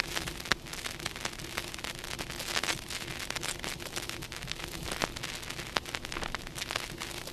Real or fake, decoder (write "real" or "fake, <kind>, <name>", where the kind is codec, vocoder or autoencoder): real